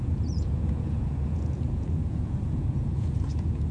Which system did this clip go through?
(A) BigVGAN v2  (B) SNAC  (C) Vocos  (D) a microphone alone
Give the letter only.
C